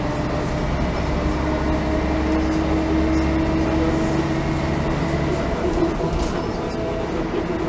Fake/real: real